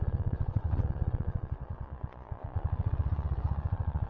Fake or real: fake